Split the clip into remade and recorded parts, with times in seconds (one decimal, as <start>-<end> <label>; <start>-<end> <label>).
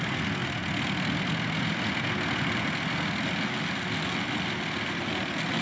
0.0-5.6 recorded